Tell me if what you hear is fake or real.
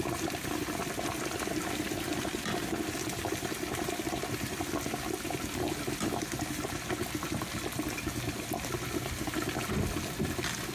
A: real